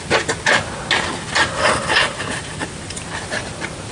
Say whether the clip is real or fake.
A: real